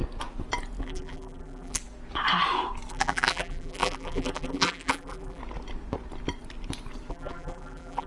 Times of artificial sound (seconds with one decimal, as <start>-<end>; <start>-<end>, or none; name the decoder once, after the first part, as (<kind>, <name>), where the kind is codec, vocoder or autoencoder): 0.8-1.8 (vocoder, BigVGAN v2); 2.9-5.4; 7.1-8.1

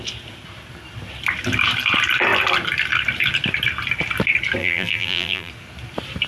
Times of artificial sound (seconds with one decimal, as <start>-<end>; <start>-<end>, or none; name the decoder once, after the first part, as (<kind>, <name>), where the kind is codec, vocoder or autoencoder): 4.6-5.5 (vocoder, BigVGAN v2)

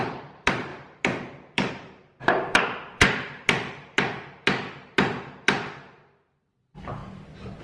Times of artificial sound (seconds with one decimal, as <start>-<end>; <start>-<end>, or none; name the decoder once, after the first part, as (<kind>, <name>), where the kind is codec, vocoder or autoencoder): 0.0-7.0 (vocoder, BigVGAN v2)

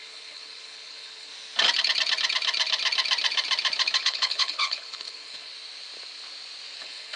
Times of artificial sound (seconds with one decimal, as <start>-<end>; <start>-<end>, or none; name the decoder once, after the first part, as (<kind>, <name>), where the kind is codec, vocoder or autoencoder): 0.0-1.3 (codec, HILCodec); 4.0-5.5; 6.8-7.2

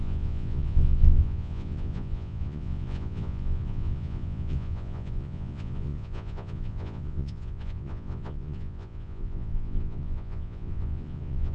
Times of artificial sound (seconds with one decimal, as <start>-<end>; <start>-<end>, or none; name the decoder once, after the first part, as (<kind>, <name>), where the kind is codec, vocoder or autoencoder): 0.0-11.5 (vocoder, Vocos)

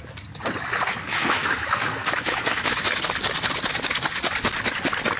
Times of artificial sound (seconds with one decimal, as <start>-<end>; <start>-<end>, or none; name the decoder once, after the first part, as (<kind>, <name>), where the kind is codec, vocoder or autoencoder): 1.1-3.0 (autoencoder, DAC-VAE)